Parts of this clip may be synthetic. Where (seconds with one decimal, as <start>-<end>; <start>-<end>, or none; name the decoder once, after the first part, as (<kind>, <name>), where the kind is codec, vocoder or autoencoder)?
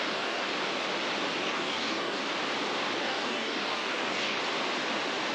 0.0-0.5 (codec, DAC); 1.4-2.2; 3.0-4.4